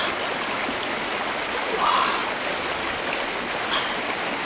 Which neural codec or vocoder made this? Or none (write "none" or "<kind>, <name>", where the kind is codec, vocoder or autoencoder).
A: none